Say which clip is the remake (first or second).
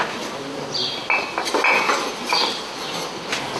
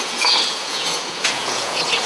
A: second